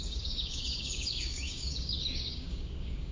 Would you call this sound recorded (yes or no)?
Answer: no